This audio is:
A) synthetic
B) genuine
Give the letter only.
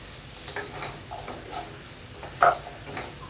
B